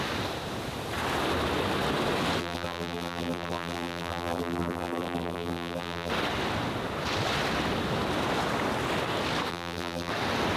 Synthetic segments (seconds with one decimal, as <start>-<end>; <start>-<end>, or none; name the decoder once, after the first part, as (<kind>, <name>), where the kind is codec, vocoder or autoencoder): 2.4-6.1 (vocoder, BigVGAN v2); 9.5-10.1